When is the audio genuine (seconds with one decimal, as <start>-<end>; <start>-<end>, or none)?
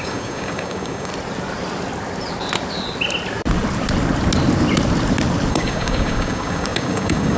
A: 1.1-5.5